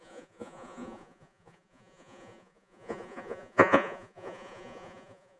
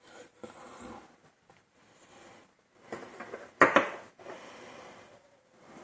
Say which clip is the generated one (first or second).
first